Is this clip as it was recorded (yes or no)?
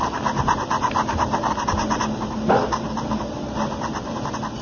yes